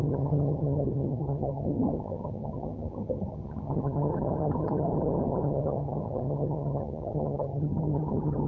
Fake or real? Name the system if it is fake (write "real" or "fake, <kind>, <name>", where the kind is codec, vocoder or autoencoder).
fake, vocoder, HiFi-GAN